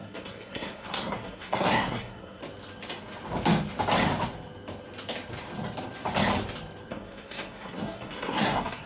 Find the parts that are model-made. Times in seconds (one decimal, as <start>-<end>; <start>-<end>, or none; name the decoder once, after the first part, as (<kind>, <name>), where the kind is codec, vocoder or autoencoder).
0.0-2.4 (codec, SNAC); 6.9-8.9